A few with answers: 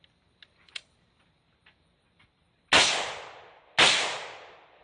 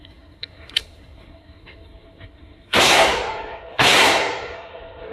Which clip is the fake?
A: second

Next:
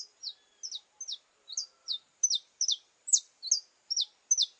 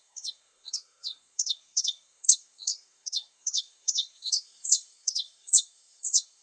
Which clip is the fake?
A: second